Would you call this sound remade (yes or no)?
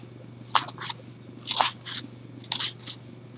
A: no